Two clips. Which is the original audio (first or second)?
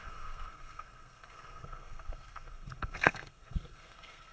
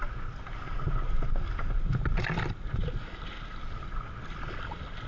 second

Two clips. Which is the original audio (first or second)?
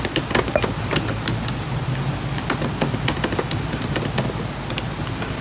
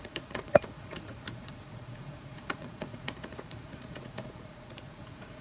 first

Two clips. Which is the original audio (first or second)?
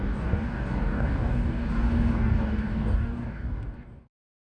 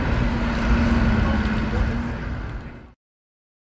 second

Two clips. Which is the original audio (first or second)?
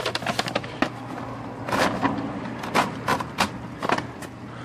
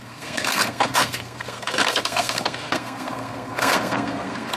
first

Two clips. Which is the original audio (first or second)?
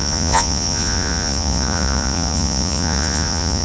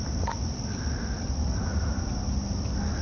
second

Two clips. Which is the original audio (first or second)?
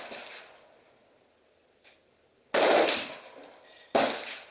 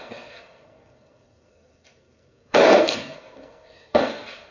first